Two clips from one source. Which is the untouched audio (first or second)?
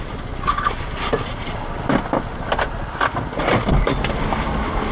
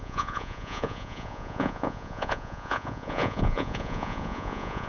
first